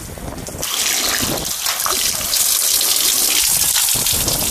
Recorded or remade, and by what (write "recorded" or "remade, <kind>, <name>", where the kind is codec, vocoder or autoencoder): recorded